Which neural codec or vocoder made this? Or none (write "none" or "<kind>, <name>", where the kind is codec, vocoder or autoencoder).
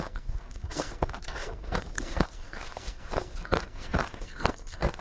codec, SNAC